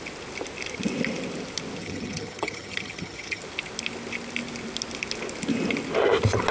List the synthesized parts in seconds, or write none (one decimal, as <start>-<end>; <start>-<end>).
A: 1.8-3.4